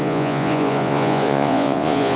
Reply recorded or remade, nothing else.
remade